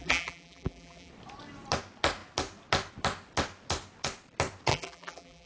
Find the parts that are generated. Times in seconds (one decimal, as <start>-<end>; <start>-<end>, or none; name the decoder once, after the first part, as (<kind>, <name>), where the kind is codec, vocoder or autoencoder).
0.0-1.1 (vocoder, BigVGAN v2); 4.7-5.5

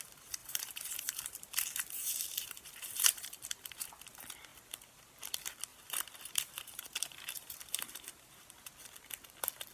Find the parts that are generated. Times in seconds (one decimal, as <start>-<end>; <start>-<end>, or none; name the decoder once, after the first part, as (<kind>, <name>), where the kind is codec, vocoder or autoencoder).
0.4-3.9 (vocoder, BigVGAN v2); 5.7-8.7

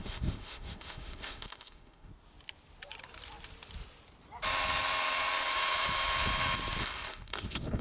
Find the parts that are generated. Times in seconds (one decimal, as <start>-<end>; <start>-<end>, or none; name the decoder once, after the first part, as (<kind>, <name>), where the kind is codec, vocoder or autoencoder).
0.0-2.1 (autoencoder, DAC-VAE); 6.8-7.8

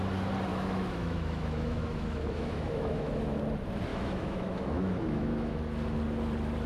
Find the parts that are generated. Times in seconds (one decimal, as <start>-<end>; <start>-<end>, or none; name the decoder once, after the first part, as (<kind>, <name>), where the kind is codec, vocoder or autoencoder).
0.5-3.4 (autoencoder, DAC-VAE); 3.9-5.6

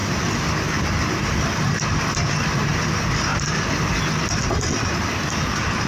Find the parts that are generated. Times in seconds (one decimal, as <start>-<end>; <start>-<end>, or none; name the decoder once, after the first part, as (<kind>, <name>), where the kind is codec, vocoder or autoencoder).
none

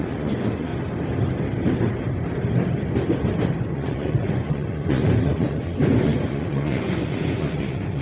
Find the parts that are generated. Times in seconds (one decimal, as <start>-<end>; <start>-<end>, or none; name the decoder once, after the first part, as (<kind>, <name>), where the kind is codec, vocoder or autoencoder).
0.0-0.7 (vocoder, Vocos); 3.6-8.0

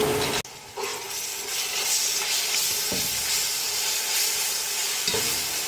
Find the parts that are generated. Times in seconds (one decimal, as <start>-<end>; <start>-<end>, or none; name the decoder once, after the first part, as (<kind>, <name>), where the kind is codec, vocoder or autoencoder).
0.9-2.8 (vocoder, BigVGAN v2); 4.8-5.7